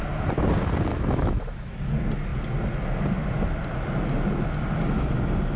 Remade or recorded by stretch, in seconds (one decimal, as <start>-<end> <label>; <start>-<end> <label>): 0.0-0.9 recorded; 0.9-1.8 remade; 1.8-5.6 recorded